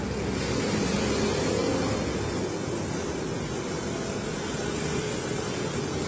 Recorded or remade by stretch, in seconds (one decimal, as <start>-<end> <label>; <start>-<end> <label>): 0.0-6.1 recorded